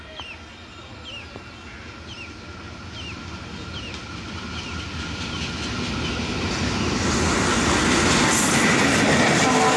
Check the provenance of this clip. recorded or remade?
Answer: recorded